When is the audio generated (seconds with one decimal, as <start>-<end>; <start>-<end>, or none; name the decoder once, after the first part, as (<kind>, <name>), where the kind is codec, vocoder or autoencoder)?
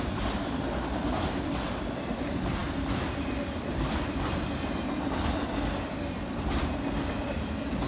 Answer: none